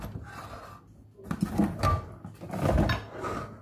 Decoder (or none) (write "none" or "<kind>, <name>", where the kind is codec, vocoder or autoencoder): none